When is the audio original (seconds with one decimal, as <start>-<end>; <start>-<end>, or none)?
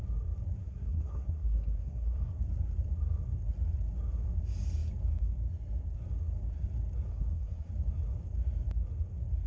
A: 0.0-0.6; 2.3-7.1; 7.7-9.5